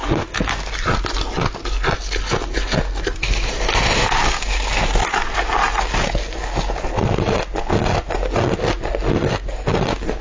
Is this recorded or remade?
recorded